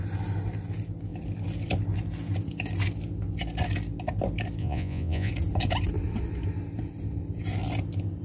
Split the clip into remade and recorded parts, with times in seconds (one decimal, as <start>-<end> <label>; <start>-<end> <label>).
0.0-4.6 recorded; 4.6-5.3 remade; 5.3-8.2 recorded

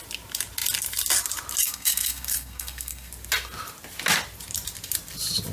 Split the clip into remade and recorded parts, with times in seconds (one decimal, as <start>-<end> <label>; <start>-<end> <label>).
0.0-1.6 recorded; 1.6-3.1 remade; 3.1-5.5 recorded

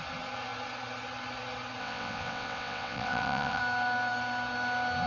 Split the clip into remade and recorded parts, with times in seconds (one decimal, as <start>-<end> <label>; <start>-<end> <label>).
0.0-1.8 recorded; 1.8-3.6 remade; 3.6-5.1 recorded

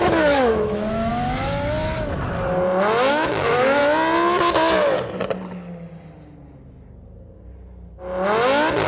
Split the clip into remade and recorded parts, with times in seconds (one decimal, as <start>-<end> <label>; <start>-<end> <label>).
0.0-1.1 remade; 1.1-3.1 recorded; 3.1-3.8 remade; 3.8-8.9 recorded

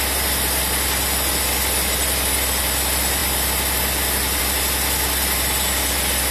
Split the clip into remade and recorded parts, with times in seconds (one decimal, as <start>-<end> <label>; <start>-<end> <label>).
0.0-6.3 recorded

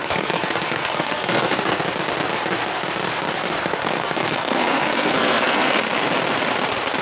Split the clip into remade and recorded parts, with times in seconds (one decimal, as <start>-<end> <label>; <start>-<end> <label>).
0.0-1.8 remade; 1.8-3.6 recorded; 3.6-5.8 remade; 5.8-7.0 recorded

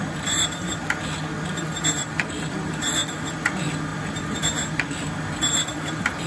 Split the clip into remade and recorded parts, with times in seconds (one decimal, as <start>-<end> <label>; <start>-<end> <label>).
0.0-0.7 remade; 0.7-2.0 recorded; 2.0-6.3 remade

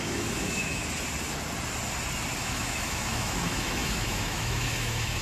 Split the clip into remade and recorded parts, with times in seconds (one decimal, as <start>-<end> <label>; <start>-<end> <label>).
0.0-0.8 remade; 0.8-2.4 recorded; 2.4-5.2 remade